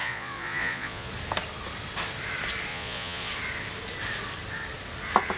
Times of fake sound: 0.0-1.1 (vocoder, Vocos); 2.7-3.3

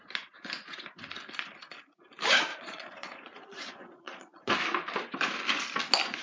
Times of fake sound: 2.5-4.5 (vocoder, Vocos)

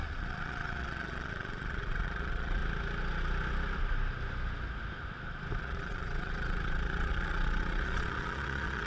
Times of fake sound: 0.0-2.6 (vocoder, Vocos); 5.6-8.9

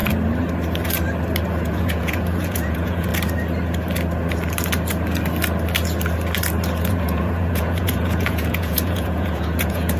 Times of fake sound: 1.6-3.1 (vocoder, Vocos); 6.9-10.0